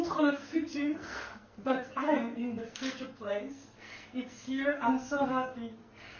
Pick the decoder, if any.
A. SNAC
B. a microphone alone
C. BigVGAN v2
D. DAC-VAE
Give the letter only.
A